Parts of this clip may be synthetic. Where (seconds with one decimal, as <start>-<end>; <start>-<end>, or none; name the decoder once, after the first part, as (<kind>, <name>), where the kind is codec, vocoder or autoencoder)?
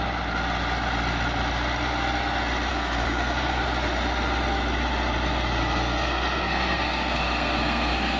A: 2.7-3.6 (codec, SNAC); 5.6-8.2